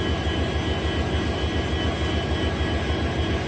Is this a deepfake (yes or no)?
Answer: no